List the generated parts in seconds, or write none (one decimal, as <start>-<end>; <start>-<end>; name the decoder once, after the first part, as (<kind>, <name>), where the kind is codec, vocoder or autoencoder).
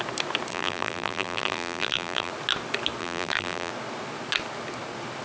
0.5-2.3 (vocoder, BigVGAN v2); 3.0-3.7